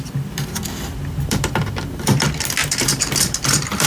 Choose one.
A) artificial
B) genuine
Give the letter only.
A